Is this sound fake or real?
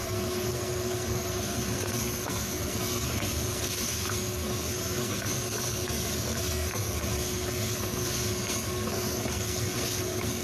fake